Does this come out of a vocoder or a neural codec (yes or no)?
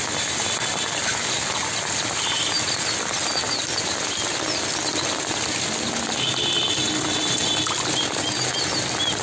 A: no